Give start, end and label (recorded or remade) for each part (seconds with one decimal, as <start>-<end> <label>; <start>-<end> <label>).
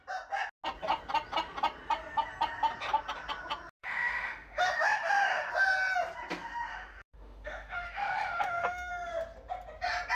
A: 0.0-3.8 recorded; 3.8-5.5 remade; 5.5-6.7 recorded; 6.7-8.9 remade; 8.9-10.1 recorded